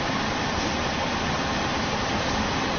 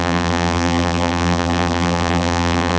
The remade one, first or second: second